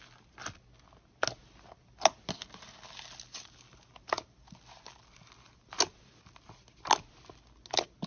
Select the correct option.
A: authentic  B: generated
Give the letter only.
A